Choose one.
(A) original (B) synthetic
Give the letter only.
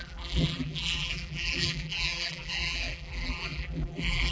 B